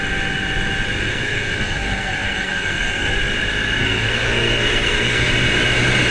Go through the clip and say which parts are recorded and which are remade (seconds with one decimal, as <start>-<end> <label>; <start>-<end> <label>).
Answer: 0.0-1.1 recorded; 1.1-3.1 remade; 3.1-3.8 recorded; 3.8-5.3 remade; 5.3-6.1 recorded